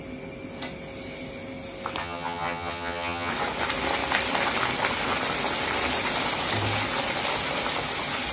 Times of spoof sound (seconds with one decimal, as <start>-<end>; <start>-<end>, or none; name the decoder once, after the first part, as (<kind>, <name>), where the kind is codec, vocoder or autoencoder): 2.0-3.3 (vocoder, HiFi-GAN)